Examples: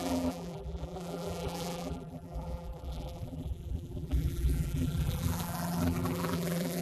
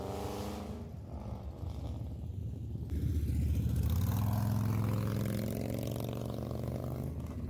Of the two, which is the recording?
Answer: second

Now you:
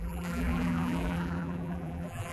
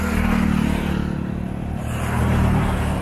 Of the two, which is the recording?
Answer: second